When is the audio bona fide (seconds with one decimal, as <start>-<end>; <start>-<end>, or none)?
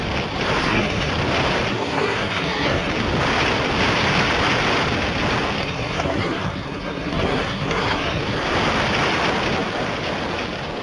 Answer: 0.0-0.6; 1.1-1.7; 2.9-5.6; 8.2-10.8